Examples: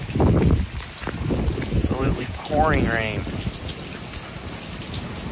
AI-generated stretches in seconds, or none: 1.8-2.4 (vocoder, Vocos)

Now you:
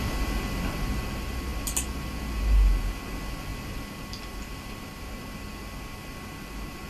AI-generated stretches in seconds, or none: none

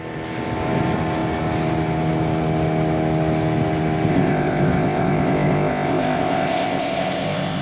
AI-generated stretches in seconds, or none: 4.1-7.6 (codec, ZipCodec)

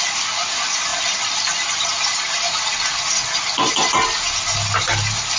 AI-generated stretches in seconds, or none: 0.9-3.7 (vocoder, BigVGAN v2)

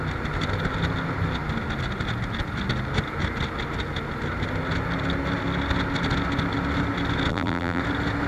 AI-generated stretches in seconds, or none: 7.3-7.8 (vocoder, BigVGAN v2)

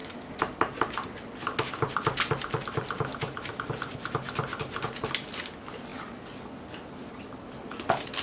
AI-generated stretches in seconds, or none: none

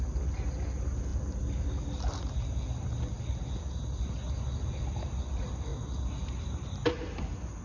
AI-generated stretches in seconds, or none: none